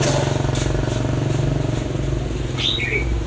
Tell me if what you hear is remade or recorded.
recorded